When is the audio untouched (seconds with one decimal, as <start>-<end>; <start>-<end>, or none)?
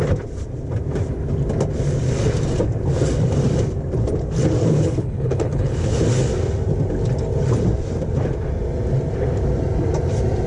0.0-4.6; 6.0-10.5